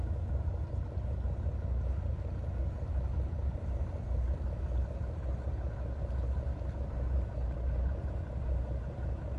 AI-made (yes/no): no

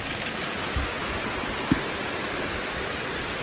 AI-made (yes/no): no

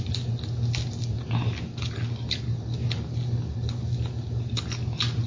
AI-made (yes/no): no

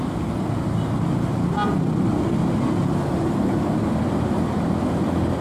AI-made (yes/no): no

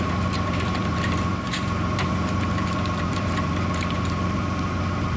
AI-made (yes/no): yes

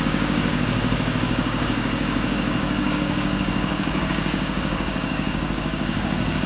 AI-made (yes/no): yes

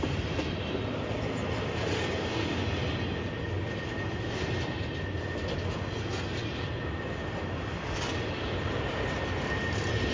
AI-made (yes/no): no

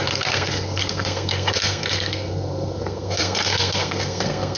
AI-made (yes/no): yes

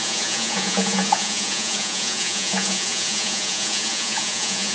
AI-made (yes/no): yes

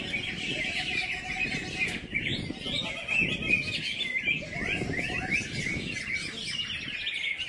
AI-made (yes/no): no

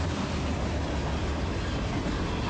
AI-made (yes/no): no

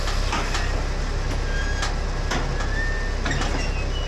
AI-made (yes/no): no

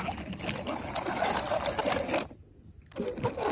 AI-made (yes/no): yes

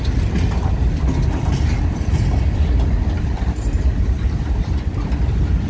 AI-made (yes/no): no